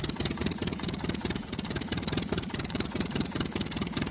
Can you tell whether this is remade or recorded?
remade